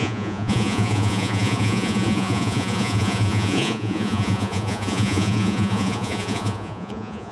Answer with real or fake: fake